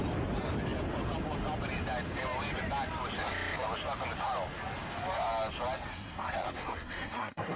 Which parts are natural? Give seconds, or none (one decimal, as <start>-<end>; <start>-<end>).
0.0-5.9